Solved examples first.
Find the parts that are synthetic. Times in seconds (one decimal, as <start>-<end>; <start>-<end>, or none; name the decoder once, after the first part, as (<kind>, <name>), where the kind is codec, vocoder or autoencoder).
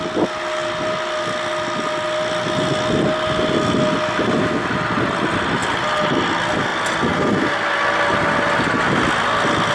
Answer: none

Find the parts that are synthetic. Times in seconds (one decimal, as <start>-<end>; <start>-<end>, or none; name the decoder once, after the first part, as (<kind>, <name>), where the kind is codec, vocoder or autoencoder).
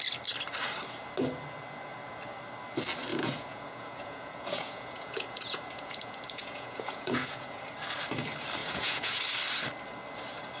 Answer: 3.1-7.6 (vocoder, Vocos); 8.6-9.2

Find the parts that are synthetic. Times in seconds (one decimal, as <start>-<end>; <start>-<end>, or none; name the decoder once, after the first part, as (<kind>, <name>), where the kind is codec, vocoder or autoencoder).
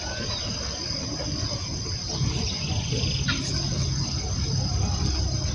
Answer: 2.4-3.0 (vocoder, Vocos)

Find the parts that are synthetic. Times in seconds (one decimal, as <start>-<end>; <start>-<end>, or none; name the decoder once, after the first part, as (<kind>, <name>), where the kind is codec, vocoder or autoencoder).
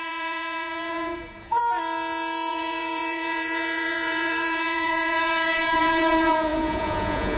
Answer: 0.0-1.6 (vocoder, Vocos); 2.5-7.4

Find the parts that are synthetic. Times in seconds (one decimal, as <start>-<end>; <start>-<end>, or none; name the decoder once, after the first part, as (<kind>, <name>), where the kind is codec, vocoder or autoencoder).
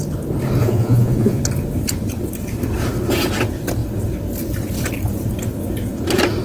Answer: 0.6-1.4 (vocoder, Vocos)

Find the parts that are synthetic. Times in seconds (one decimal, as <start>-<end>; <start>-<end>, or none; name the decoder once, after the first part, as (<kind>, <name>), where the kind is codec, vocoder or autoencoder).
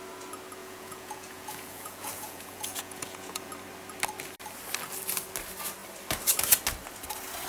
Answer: 0.6-3.5 (vocoder, Vocos)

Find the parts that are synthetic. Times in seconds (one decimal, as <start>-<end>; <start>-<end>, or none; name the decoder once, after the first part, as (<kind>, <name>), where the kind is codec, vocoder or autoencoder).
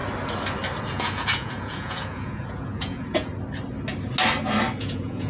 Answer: 0.9-3.3 (vocoder, Vocos); 4.8-5.3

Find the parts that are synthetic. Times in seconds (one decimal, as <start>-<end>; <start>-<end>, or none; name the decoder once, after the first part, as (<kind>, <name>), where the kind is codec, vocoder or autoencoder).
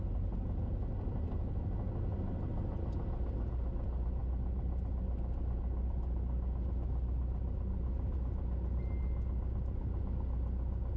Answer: none